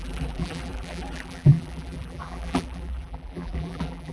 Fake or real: fake